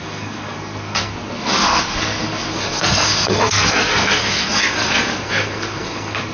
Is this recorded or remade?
remade